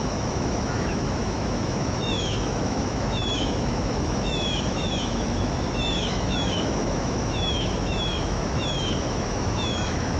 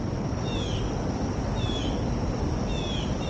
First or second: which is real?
second